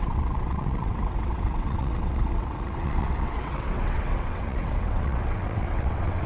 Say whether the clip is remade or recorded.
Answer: remade